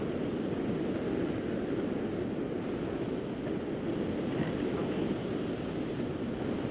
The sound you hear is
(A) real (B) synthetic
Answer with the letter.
A